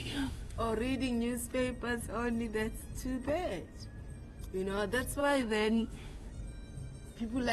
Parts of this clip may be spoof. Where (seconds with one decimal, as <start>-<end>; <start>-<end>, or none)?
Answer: 0.0-0.6; 5.2-6.3